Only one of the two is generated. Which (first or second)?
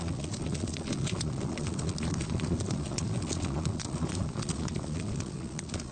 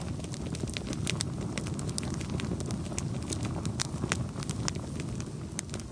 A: first